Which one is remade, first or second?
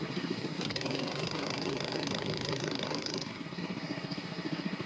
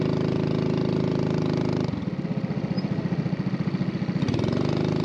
first